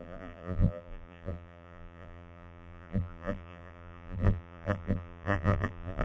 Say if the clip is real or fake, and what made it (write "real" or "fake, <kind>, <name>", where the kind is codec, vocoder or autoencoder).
fake, vocoder, BigVGAN v2